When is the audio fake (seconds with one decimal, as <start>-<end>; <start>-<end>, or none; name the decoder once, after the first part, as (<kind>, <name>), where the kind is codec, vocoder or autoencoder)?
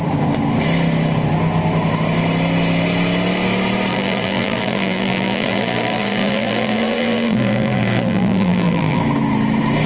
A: 3.9-9.0 (vocoder, BigVGAN v2)